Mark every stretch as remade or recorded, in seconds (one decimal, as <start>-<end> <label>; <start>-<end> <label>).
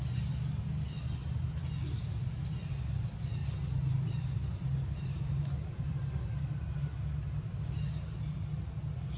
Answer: 0.0-1.2 recorded; 1.2-2.3 remade; 2.3-3.4 recorded; 3.4-8.2 remade; 8.2-9.2 recorded